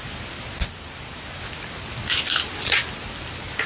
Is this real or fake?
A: real